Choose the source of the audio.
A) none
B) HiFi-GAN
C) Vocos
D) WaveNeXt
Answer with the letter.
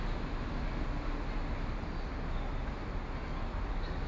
A